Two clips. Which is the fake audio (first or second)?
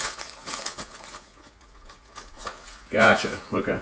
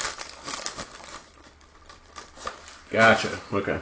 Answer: first